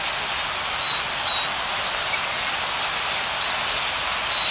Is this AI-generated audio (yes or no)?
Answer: no